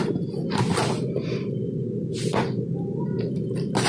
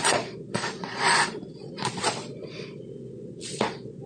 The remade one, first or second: second